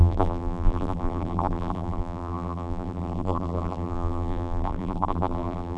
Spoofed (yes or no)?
yes